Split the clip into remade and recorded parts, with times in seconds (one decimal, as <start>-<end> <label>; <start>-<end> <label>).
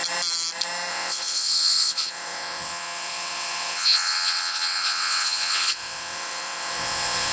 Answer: 0.0-0.9 recorded; 0.9-7.3 remade